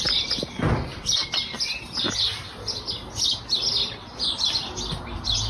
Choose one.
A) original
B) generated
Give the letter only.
A